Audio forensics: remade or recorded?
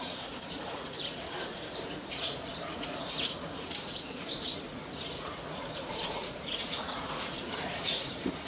remade